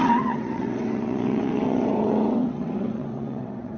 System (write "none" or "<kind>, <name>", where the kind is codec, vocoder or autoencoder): vocoder, WaveNeXt